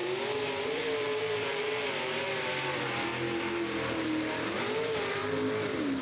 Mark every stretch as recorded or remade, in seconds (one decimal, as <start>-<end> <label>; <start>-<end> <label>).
0.0-0.6 recorded; 0.6-3.1 remade; 3.1-3.9 recorded; 3.9-5.2 remade; 5.2-6.0 recorded